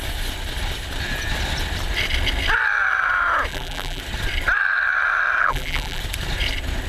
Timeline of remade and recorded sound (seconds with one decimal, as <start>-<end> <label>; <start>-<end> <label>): 0.0-3.5 recorded; 3.5-4.0 remade; 4.0-5.4 recorded; 5.4-6.0 remade; 6.0-6.9 recorded